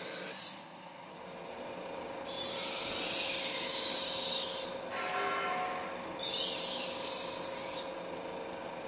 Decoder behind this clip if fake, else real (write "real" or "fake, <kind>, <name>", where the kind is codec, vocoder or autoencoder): real